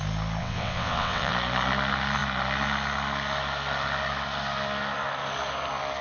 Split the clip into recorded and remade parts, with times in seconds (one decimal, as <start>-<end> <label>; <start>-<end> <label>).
0.0-0.4 recorded; 0.4-1.3 remade; 1.3-6.0 recorded